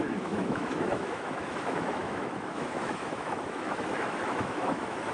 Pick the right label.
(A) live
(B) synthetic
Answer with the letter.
B